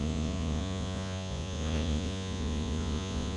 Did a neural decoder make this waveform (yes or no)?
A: yes